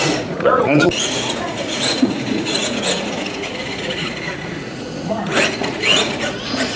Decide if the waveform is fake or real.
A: fake